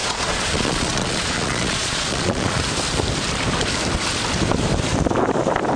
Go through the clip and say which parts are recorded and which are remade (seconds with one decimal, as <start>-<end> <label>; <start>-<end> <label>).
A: 0.0-2.6 remade; 2.6-5.8 recorded